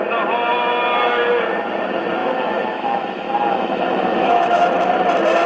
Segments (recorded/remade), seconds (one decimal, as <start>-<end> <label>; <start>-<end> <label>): 0.0-2.2 recorded; 2.2-4.7 remade; 4.7-5.5 recorded

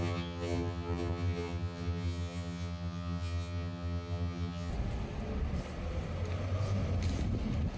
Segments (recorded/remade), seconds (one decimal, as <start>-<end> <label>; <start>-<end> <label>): 0.0-4.7 remade; 4.7-7.8 recorded

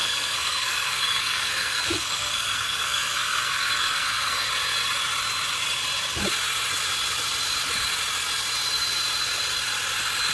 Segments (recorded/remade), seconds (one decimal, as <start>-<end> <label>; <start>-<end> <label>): 0.0-4.5 remade; 4.5-10.3 recorded

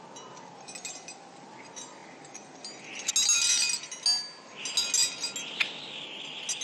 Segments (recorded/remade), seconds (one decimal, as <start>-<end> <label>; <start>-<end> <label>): 0.0-6.6 recorded

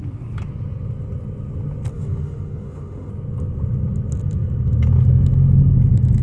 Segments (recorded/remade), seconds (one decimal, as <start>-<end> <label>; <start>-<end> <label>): 0.0-1.9 recorded; 1.9-3.1 remade; 3.1-6.2 recorded